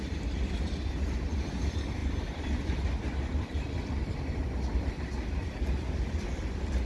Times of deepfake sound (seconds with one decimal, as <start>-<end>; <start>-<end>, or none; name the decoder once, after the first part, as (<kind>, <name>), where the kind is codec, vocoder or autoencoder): none

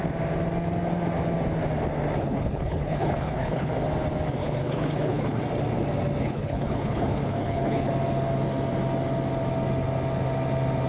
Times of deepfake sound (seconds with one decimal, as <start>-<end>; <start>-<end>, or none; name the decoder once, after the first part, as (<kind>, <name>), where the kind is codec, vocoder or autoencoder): 2.2-3.7 (codec, HILCodec); 4.4-5.4; 6.2-7.9

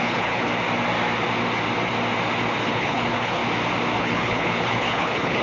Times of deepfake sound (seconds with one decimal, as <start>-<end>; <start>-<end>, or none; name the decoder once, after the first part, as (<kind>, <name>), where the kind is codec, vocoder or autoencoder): 0.0-0.5 (codec, HILCodec); 2.6-3.4; 4.0-5.4

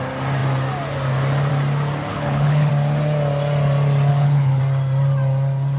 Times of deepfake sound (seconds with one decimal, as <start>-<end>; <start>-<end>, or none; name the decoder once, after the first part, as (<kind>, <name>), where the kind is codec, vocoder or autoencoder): 2.1-2.7 (codec, HILCodec); 4.1-4.6